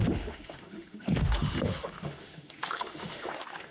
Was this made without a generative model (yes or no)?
no